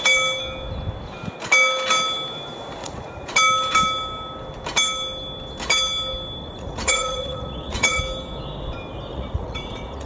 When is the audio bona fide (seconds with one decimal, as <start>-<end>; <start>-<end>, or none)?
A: 0.0-2.8; 3.3-6.4; 8.0-9.1